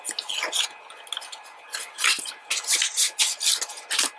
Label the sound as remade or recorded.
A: recorded